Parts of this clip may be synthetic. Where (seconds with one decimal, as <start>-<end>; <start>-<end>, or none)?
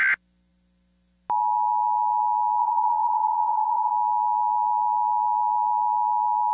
2.6-3.9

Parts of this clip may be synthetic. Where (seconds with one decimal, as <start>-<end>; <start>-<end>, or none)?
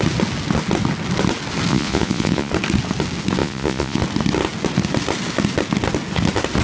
1.7-2.5; 3.4-4.0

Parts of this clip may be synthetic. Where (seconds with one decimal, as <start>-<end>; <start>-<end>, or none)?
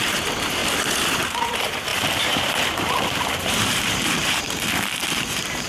0.0-0.6; 1.2-5.7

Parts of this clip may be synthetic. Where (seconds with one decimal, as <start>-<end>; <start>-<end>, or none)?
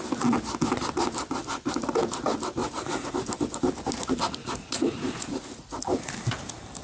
2.6-3.1; 4.4-6.1